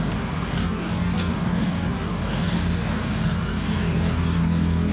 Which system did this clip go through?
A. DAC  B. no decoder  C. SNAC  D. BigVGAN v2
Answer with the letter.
A